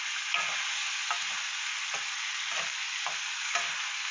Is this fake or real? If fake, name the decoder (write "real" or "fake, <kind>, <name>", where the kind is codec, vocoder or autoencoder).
real